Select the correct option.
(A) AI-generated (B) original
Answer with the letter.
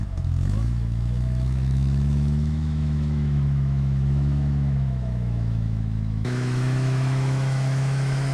A